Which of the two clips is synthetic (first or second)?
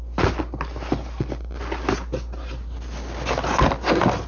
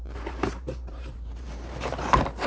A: second